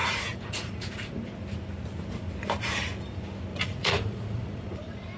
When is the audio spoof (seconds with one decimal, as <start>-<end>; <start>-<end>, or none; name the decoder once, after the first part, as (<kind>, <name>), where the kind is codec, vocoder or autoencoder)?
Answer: 0.0-1.1 (vocoder, Vocos); 3.5-5.2